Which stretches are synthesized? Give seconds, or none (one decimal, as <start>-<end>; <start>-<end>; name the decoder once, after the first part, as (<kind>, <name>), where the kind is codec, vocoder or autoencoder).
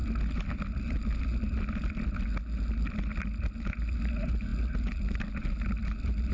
none